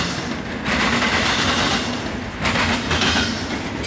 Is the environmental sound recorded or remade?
recorded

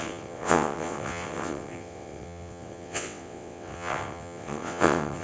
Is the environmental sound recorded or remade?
remade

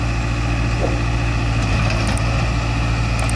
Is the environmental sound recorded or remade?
recorded